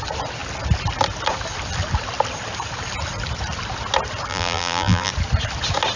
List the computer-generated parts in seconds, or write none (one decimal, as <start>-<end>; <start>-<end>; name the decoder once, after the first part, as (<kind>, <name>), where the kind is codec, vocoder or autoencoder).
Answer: 4.3-5.1 (vocoder, BigVGAN v2)